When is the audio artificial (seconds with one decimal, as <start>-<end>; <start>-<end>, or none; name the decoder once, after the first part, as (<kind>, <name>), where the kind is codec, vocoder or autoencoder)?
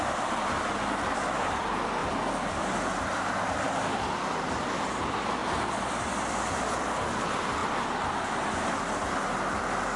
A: 0.0-2.0 (vocoder, BigVGAN v2); 2.5-7.6